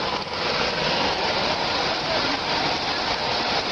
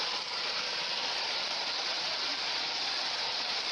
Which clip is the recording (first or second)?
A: first